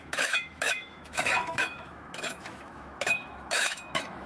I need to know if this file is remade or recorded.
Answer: remade